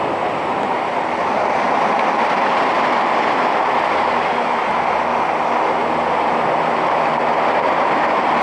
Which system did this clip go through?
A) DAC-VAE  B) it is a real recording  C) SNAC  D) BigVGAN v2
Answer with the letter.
B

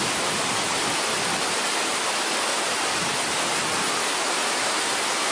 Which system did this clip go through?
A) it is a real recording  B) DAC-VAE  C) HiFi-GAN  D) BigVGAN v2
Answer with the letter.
A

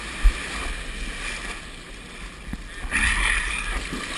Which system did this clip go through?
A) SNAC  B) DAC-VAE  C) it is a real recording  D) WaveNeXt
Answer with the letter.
C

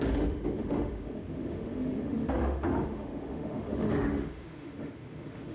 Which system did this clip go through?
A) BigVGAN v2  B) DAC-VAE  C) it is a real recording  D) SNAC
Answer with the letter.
B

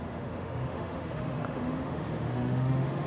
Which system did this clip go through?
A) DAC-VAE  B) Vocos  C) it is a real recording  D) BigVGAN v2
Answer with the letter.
A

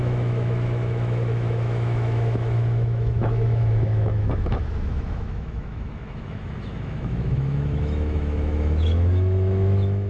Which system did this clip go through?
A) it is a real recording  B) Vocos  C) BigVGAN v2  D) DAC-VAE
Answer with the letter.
D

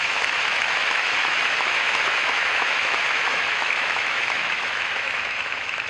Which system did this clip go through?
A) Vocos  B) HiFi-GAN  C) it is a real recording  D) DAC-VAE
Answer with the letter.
D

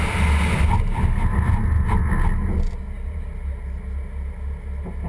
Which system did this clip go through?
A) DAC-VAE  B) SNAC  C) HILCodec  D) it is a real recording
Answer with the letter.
D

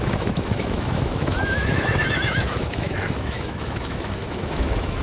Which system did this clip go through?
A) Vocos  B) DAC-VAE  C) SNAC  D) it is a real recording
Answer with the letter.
B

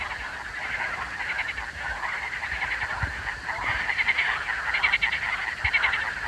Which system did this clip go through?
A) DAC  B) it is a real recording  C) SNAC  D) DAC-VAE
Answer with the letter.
B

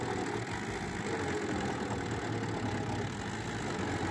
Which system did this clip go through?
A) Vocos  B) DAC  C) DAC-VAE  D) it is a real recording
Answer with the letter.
D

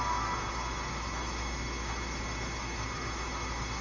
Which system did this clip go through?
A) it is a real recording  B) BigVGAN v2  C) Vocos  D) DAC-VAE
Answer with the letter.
D